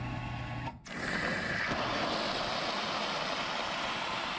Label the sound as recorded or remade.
recorded